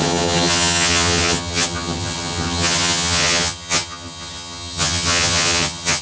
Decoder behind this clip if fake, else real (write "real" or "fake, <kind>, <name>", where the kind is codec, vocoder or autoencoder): fake, vocoder, HiFi-GAN